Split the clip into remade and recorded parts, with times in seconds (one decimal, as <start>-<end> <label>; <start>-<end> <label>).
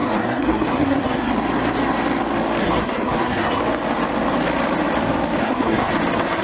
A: 0.0-1.3 remade; 1.3-2.6 recorded; 2.6-3.6 remade; 3.6-5.4 recorded; 5.4-5.9 remade; 5.9-6.4 recorded